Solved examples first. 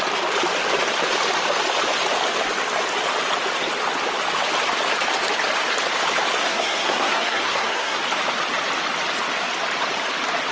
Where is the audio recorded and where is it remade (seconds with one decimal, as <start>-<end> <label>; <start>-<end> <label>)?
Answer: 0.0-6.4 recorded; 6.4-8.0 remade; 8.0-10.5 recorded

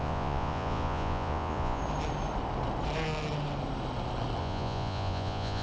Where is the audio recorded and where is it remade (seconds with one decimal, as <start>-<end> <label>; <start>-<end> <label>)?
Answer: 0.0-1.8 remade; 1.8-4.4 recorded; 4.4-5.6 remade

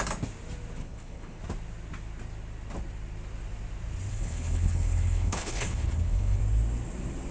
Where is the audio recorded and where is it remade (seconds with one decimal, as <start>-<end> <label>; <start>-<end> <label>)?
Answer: 0.0-0.8 recorded; 0.8-1.4 remade; 1.4-4.1 recorded; 4.1-6.4 remade; 6.4-7.3 recorded

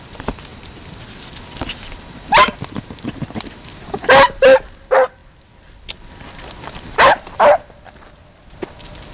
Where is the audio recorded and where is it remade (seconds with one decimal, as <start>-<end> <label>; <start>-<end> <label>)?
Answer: 0.0-9.1 recorded

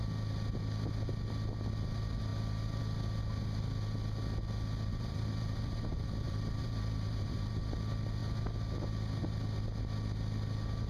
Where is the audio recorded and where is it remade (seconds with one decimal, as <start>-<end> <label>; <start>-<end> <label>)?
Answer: 0.0-4.9 recorded; 4.9-7.5 remade; 7.5-10.9 recorded